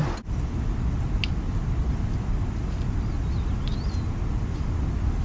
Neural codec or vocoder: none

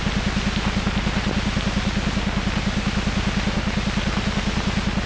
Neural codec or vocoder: none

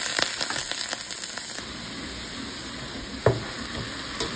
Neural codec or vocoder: none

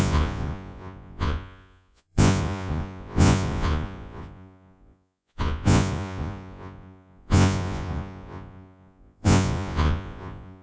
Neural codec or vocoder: vocoder, Vocos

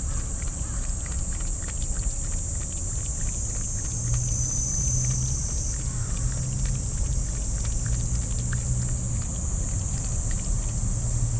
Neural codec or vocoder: none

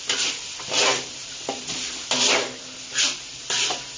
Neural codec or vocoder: none